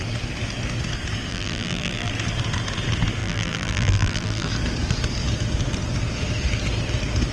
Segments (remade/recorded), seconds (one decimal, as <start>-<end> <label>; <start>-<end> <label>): 0.0-1.3 recorded; 1.3-2.1 remade; 2.1-3.2 recorded; 3.2-4.5 remade; 4.5-7.3 recorded